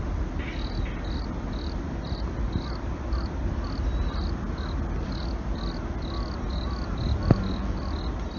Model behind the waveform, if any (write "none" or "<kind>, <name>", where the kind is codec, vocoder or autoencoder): none